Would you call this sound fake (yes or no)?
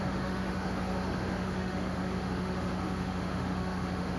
yes